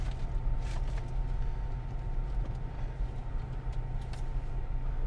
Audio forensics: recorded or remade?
recorded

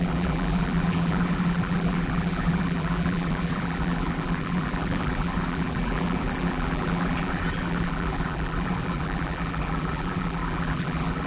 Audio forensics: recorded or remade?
remade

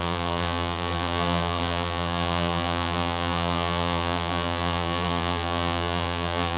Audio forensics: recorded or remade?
remade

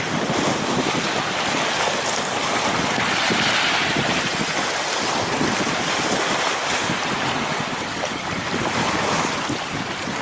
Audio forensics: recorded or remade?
recorded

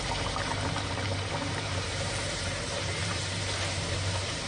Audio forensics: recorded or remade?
remade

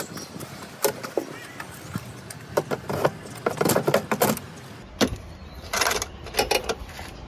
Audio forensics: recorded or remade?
recorded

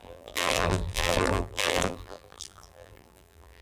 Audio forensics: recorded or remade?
remade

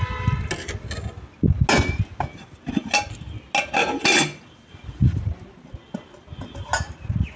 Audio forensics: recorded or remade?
recorded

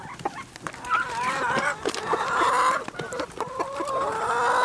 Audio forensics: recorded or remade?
recorded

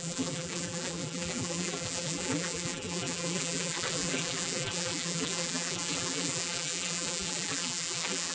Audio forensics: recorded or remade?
remade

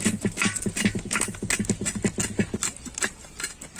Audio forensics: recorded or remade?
recorded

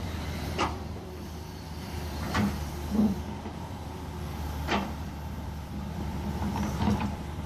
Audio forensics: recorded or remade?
remade